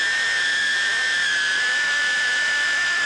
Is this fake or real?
fake